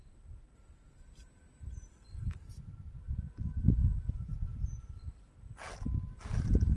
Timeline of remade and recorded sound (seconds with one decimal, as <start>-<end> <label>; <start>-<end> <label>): 0.0-6.8 recorded